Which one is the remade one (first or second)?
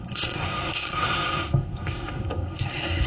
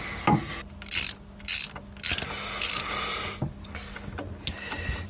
first